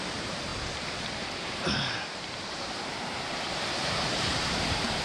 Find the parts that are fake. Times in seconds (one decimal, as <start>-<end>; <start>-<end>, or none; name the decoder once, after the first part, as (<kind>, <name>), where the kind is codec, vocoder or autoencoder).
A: 0.0-5.0 (vocoder, BigVGAN v2)